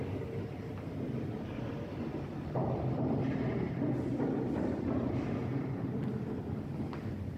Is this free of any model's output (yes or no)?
no